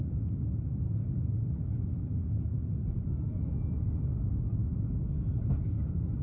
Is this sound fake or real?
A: real